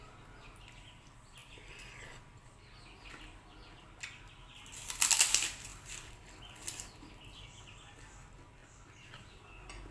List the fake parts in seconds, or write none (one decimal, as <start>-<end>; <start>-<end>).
5.7-6.4; 8.6-9.9